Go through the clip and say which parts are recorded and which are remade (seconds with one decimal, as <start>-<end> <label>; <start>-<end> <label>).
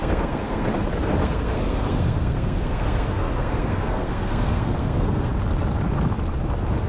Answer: 0.0-0.7 remade; 0.7-1.2 recorded; 1.2-5.3 remade; 5.3-6.9 recorded